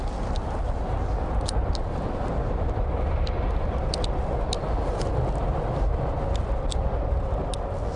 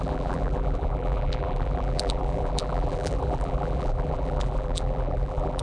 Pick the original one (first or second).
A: first